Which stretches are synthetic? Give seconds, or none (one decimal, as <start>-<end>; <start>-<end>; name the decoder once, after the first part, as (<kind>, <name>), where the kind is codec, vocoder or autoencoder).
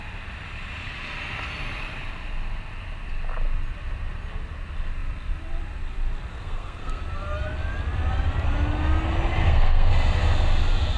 6.3-7.0 (codec, SNAC); 9.4-9.9